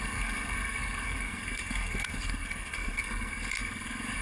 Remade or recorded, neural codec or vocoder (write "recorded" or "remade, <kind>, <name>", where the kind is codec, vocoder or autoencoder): remade, codec, SNAC